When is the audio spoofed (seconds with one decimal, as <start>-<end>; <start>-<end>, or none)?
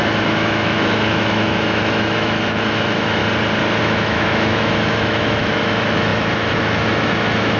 0.0-3.2; 3.8-7.6